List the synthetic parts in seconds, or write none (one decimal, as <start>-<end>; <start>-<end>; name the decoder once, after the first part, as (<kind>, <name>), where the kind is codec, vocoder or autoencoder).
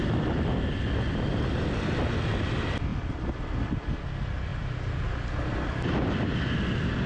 none